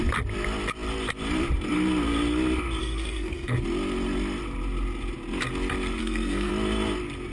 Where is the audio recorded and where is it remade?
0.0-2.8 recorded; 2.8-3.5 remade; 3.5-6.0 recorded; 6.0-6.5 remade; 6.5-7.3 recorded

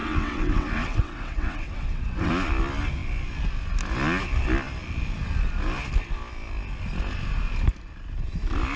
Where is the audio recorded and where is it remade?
0.0-2.3 remade; 2.3-8.8 recorded

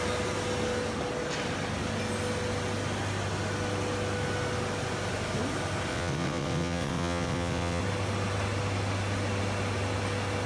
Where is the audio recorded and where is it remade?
0.0-5.9 recorded; 5.9-7.8 remade; 7.8-10.5 recorded

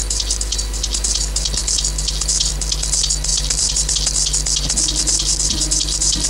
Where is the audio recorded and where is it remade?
0.0-3.3 recorded; 3.3-3.9 remade; 3.9-5.3 recorded; 5.3-6.3 remade

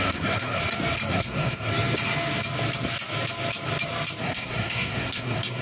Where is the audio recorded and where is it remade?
0.0-0.6 remade; 0.6-1.1 recorded; 1.1-1.7 remade; 1.7-4.2 recorded; 4.2-5.6 remade

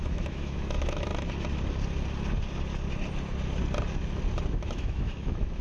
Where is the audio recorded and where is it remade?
0.0-1.1 remade; 1.1-4.5 recorded; 4.5-5.6 remade